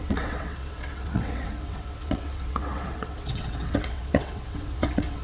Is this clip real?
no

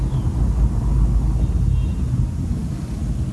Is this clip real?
yes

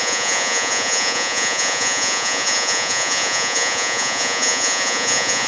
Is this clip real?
no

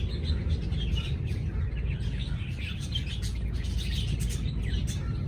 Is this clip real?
yes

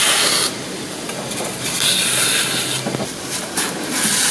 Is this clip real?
yes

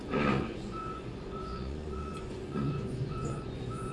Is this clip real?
no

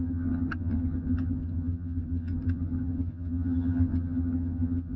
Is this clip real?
no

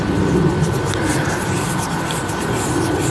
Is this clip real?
yes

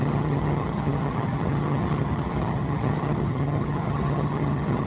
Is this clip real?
no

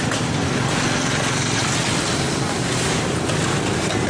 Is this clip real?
yes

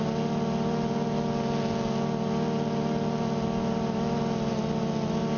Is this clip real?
yes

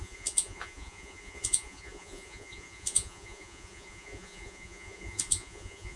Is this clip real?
no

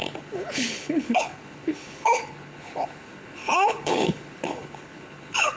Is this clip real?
no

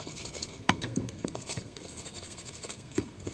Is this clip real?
no